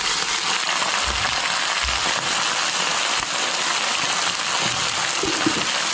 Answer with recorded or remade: recorded